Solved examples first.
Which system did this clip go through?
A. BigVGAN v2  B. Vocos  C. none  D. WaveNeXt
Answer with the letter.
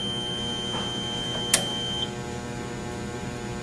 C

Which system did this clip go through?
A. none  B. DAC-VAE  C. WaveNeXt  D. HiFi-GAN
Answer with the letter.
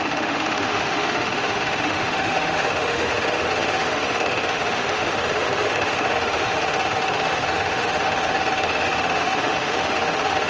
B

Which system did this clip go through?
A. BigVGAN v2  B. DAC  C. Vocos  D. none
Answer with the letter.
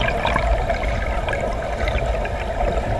D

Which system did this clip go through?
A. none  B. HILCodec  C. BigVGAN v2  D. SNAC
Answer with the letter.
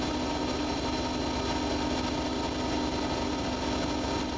A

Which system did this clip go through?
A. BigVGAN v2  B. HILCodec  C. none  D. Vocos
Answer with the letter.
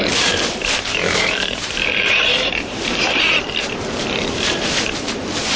A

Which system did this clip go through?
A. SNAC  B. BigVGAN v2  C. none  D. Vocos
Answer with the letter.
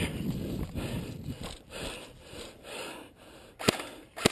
C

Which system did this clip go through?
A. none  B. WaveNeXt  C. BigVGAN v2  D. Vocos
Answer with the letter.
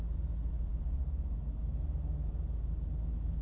A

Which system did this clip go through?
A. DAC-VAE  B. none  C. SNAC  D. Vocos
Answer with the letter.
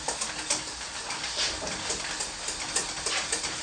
B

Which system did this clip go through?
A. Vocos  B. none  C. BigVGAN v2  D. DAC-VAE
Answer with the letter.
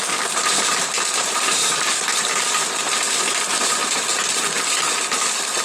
C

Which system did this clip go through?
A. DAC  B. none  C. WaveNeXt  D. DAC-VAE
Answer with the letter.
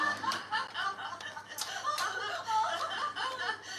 B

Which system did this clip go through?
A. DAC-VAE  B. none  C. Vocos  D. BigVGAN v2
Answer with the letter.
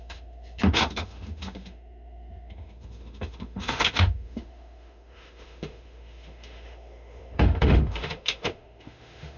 A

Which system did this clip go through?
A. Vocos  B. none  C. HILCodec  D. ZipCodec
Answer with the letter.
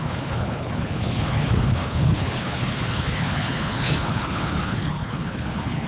C